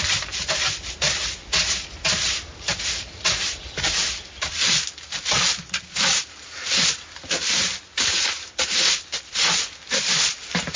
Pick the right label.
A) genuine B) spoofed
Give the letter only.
B